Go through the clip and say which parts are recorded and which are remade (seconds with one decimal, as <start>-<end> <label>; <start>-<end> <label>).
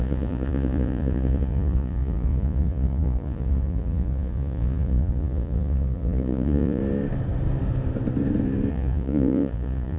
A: 0.0-6.8 remade; 6.8-8.7 recorded; 8.7-10.0 remade